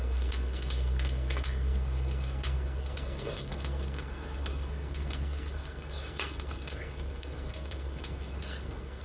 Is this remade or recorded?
remade